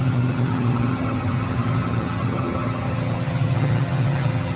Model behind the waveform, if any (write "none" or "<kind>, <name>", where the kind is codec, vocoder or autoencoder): vocoder, HiFi-GAN